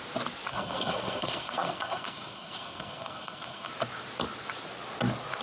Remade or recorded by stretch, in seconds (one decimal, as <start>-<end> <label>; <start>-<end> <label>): 0.0-0.5 recorded; 0.5-3.7 remade; 3.7-5.4 recorded